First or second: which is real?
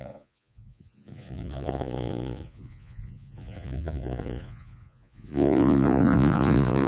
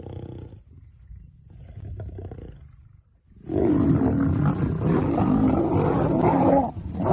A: second